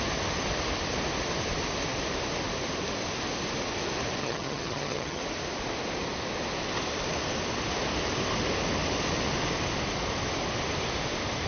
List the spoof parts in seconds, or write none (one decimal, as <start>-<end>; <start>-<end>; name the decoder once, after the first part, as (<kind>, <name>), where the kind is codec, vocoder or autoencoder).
4.2-5.2 (vocoder, HiFi-GAN)

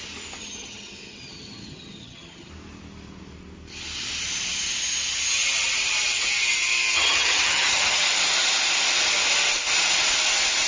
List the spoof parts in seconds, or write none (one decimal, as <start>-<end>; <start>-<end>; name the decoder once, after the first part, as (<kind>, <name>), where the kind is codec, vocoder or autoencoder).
0.4-2.5 (vocoder, HiFi-GAN); 6.9-8.0

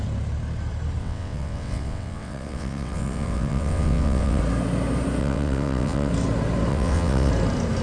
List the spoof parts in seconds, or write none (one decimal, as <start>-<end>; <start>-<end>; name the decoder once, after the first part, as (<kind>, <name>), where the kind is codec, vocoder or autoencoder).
1.0-4.4 (vocoder, WaveNeXt); 5.2-6.1; 6.7-7.3

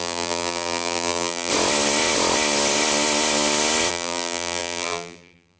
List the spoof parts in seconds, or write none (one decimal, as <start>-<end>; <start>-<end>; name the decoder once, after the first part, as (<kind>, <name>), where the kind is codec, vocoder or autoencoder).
0.0-1.5 (vocoder, BigVGAN v2); 3.9-5.6

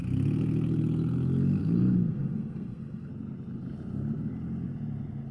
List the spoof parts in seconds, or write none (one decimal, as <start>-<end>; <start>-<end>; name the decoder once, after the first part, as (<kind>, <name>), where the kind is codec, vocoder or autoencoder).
1.6-3.1 (codec, SNAC)